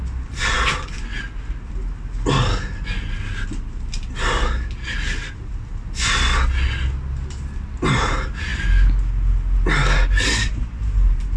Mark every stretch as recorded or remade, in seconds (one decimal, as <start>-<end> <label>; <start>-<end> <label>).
0.0-11.4 recorded